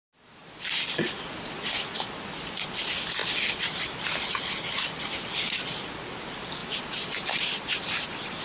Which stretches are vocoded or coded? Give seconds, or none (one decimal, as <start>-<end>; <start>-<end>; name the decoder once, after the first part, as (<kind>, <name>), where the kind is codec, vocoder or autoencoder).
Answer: none

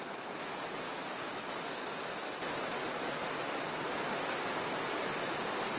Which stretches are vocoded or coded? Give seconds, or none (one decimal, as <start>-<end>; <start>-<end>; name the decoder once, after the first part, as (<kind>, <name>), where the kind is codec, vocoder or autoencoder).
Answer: none

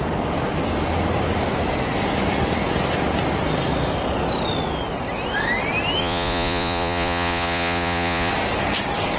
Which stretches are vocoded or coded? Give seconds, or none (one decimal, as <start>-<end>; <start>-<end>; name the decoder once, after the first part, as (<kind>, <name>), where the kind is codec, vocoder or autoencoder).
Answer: 6.0-8.3 (vocoder, Vocos)

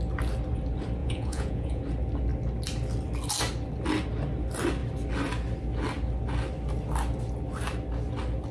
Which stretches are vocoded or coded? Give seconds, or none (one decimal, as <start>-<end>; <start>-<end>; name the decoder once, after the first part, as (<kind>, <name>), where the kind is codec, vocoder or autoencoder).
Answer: 1.0-1.8 (vocoder, Vocos)